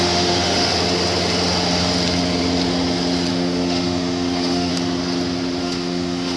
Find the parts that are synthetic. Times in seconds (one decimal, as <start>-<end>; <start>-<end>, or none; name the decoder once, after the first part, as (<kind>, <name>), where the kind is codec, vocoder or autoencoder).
0.0-0.7 (autoencoder, DAC-VAE); 3.3-4.7; 5.6-6.4